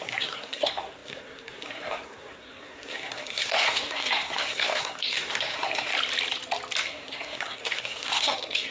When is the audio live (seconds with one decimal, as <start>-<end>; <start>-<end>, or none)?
5.9-6.8

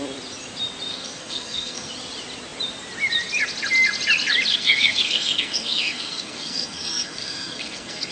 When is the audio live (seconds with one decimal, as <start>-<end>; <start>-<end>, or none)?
0.0-0.9; 1.9-4.5

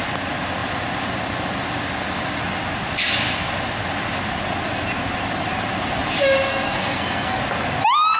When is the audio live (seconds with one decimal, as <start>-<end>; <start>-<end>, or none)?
0.0-6.5; 7.4-8.2